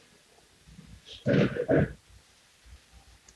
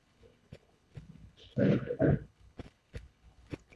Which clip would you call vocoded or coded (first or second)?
second